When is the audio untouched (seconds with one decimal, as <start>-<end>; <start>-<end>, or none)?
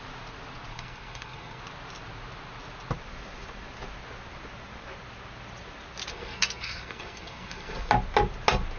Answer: 0.0-0.7; 1.6-6.1; 7.9-8.8